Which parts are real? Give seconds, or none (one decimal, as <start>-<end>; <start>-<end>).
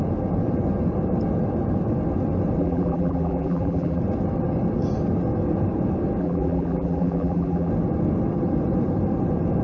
0.0-2.6; 4.0-6.2; 7.7-9.6